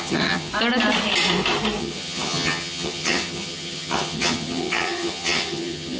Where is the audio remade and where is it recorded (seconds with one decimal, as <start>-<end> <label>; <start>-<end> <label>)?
0.0-0.5 remade; 0.5-1.8 recorded; 1.8-6.0 remade